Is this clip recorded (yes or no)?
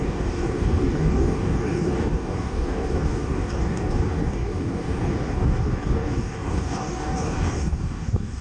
no